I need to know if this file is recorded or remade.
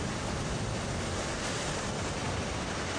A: recorded